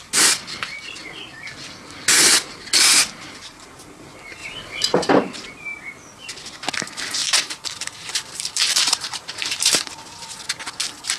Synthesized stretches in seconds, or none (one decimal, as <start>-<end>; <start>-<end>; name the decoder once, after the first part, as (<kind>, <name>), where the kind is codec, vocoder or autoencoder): 7.2-9.8 (vocoder, BigVGAN v2)